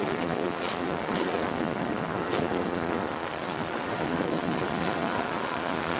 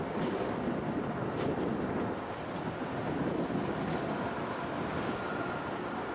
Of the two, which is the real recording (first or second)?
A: second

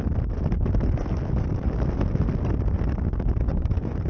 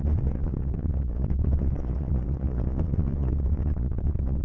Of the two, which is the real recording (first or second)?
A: first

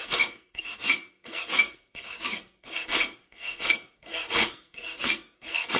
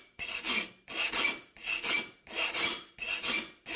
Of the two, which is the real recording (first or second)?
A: second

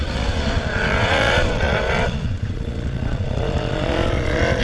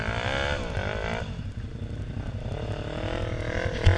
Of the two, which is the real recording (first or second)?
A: second